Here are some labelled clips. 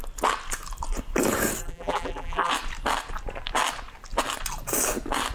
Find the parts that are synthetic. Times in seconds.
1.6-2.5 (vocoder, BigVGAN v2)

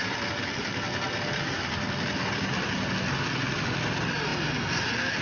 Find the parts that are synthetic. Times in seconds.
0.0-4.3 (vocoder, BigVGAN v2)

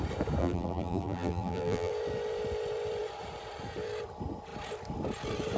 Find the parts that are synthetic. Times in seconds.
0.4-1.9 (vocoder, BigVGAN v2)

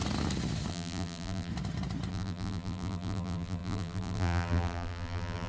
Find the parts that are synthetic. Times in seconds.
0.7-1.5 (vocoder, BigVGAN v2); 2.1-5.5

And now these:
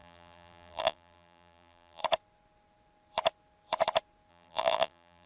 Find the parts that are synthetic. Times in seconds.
0.0-2.0 (vocoder, BigVGAN v2); 4.3-5.3

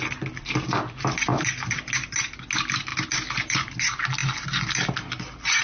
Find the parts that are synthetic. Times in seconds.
none

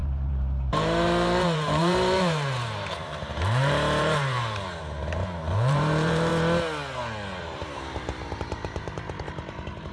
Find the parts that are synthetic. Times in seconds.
0.0-6.3 (vocoder, BigVGAN v2); 7.4-9.9